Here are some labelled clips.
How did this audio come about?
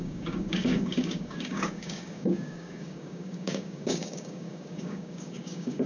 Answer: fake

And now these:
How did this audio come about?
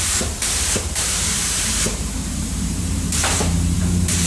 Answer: fake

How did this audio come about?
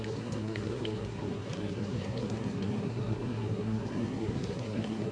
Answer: fake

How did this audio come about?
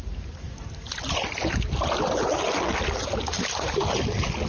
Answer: real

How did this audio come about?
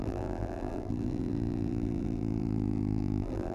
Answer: fake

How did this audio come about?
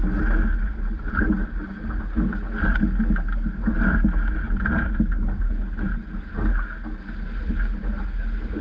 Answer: real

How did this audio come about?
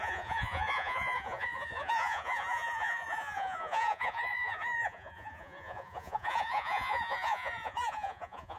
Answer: fake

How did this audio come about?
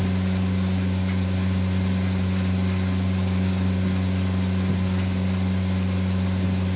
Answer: real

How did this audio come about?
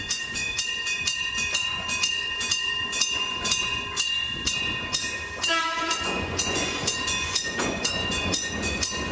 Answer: fake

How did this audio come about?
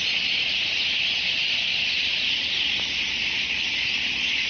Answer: real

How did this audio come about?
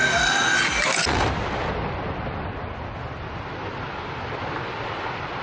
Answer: real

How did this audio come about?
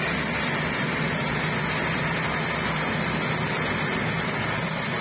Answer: real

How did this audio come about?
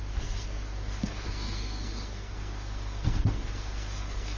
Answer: fake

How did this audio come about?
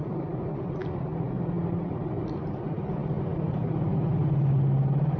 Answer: real